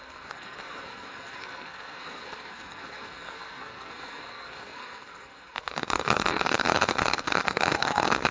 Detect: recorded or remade remade